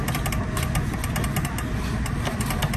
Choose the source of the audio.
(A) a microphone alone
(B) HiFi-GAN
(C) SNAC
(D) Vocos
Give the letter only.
A